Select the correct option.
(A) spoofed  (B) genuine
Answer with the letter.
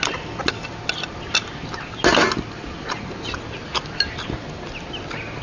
B